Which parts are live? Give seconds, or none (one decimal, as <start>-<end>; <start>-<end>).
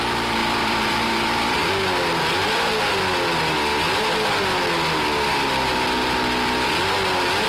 0.0-0.4; 1.7-7.5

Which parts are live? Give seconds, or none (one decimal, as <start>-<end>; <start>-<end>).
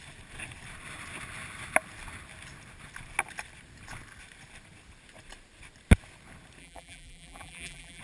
0.0-6.6